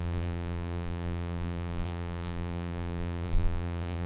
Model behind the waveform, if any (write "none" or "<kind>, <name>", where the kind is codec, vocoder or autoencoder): vocoder, BigVGAN v2